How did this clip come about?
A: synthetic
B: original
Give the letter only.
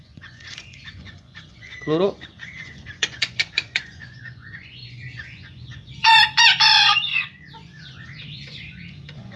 A